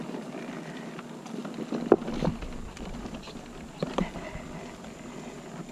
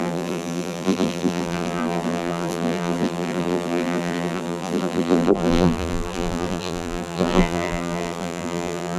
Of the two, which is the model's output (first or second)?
second